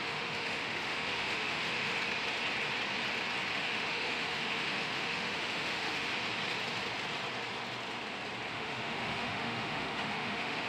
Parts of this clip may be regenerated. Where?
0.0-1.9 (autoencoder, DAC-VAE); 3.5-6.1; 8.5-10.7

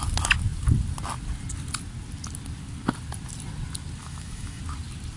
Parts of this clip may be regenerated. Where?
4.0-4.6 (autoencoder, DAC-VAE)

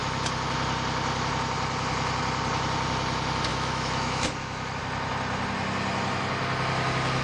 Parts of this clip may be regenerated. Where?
3.5-4.8 (autoencoder, DAC-VAE)